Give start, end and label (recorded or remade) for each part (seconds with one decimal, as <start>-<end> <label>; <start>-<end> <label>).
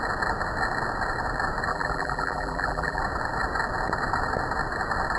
0.0-1.7 recorded; 1.7-3.0 remade; 3.0-5.2 recorded